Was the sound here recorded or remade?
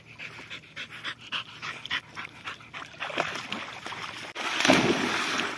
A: recorded